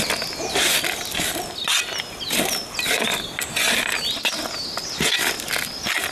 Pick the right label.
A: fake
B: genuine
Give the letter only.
B